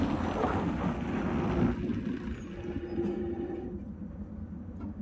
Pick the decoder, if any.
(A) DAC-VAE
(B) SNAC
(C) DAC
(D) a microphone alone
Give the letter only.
D